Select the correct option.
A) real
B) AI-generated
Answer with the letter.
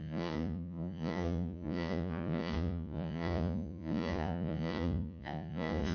B